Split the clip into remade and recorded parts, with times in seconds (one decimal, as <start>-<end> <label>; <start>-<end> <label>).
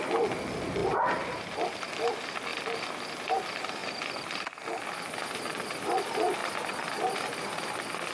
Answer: 0.0-3.8 recorded; 3.8-4.8 remade; 4.8-8.1 recorded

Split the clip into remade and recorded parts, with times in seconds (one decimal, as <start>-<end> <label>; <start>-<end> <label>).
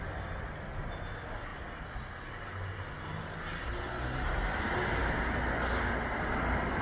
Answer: 0.0-6.8 recorded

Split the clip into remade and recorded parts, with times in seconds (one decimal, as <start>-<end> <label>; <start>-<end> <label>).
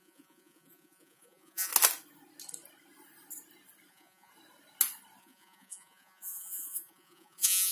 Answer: 0.0-1.7 remade; 1.7-3.9 recorded; 3.9-4.3 remade; 4.3-5.2 recorded; 5.2-7.7 remade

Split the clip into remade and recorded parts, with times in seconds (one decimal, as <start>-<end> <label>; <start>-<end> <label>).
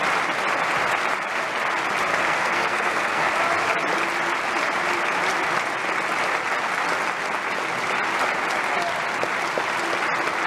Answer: 0.0-2.1 recorded; 2.1-3.3 remade; 3.3-10.5 recorded